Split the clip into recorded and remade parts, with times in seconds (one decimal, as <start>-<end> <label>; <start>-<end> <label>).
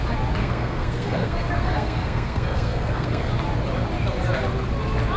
0.0-0.4 recorded; 0.4-3.3 remade; 3.3-5.2 recorded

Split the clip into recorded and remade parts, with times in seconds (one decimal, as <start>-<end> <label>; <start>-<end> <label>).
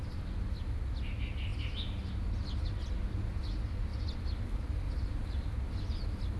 0.0-6.4 recorded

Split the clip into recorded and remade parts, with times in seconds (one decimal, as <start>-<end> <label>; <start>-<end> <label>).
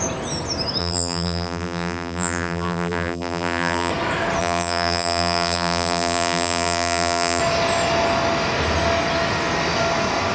0.0-0.8 recorded; 0.8-3.9 remade; 3.9-4.4 recorded; 4.4-7.4 remade; 7.4-10.3 recorded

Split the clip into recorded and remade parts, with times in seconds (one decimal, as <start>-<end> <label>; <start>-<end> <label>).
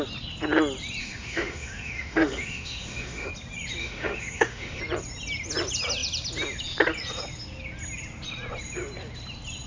0.0-1.0 recorded; 1.0-3.3 remade; 3.3-3.8 recorded; 3.8-4.8 remade; 4.8-9.7 recorded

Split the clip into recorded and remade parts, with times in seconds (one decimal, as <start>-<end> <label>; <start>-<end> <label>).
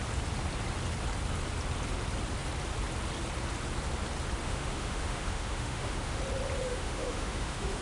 0.0-4.4 recorded; 4.4-6.2 remade; 6.2-6.7 recorded; 6.7-7.8 remade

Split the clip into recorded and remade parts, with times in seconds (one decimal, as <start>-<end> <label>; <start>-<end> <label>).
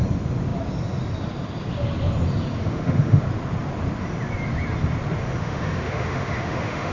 0.0-2.6 recorded; 2.6-3.2 remade; 3.2-5.4 recorded; 5.4-6.9 remade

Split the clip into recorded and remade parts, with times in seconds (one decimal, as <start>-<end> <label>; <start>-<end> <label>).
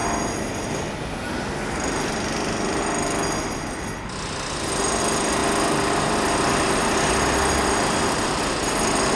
0.0-9.2 recorded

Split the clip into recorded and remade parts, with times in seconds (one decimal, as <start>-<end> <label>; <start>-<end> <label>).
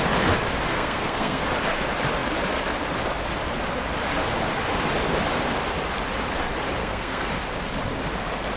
0.0-0.7 recorded; 0.7-1.5 remade; 1.5-6.8 recorded; 6.8-7.3 remade; 7.3-8.6 recorded